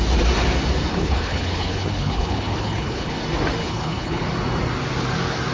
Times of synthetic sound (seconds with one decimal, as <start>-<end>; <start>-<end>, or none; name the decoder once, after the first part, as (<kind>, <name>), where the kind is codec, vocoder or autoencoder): 0.9-3.2 (codec, HILCodec); 3.6-4.2